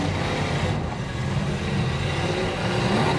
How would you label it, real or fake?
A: real